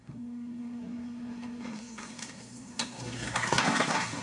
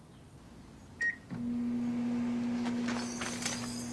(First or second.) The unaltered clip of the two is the second